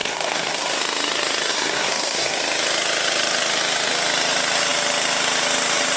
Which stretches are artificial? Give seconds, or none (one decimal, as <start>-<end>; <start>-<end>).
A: 0.0-0.8; 1.5-2.4